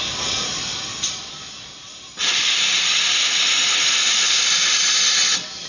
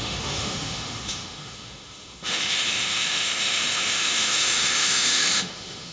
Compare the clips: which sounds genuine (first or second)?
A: first